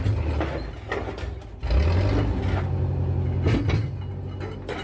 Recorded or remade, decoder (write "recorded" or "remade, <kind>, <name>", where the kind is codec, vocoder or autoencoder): recorded